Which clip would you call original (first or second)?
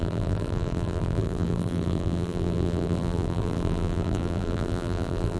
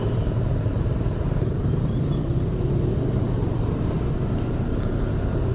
second